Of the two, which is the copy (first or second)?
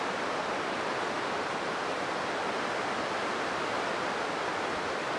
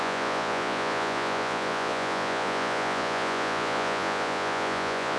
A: second